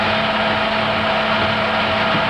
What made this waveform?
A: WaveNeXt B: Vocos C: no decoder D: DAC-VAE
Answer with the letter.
C